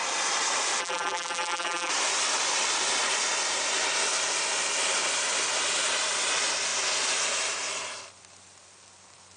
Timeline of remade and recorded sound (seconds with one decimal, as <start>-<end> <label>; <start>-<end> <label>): 0.0-0.8 recorded; 0.8-1.9 remade; 1.9-9.4 recorded